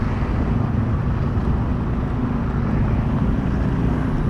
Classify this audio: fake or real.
real